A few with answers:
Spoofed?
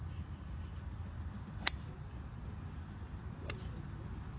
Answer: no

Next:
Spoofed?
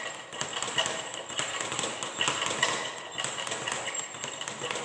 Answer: no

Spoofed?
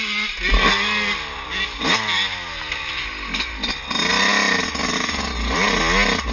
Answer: no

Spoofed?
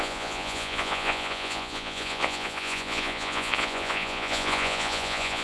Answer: yes